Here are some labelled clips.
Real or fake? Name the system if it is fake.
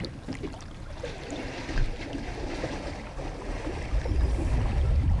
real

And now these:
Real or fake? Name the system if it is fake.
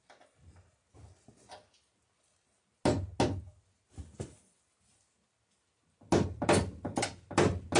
real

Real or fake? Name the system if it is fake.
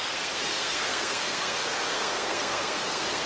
fake, codec, SNAC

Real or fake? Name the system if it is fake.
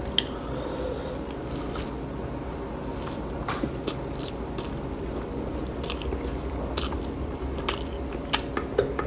real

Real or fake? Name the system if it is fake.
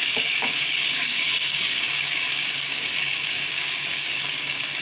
fake, codec, DAC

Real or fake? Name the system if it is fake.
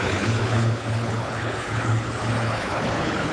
fake, codec, HILCodec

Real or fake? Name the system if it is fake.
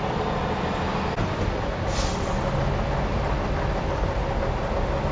real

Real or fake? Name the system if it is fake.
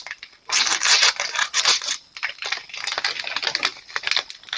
real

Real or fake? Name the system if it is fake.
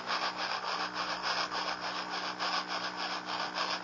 real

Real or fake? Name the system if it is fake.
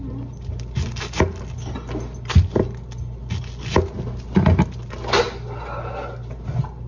real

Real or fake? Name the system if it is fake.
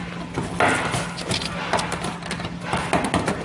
real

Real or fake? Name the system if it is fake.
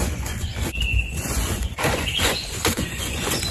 fake, vocoder, Vocos